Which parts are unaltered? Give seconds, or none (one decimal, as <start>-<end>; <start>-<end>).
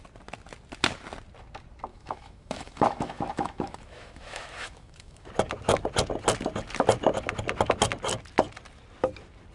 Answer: 0.0-1.9; 5.3-9.5